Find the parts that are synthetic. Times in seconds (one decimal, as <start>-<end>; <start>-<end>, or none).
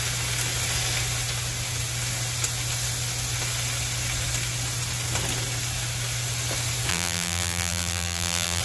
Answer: 6.9-8.6